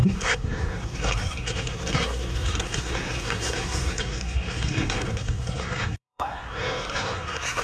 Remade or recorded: remade